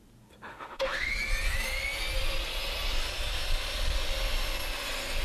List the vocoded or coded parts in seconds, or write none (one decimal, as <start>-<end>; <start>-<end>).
0.5-1.1